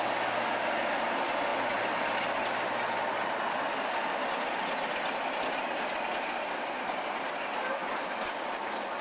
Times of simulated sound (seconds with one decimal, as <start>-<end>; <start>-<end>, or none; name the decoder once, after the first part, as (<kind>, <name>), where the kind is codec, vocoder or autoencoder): none